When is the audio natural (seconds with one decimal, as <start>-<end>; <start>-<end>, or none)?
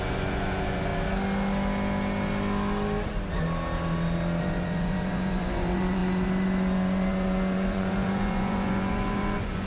0.9-4.4